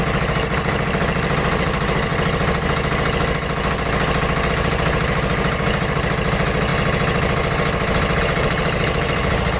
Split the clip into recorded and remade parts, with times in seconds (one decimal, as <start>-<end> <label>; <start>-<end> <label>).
0.0-2.1 remade; 2.1-4.5 recorded; 4.5-6.7 remade; 6.7-8.2 recorded; 8.2-9.6 remade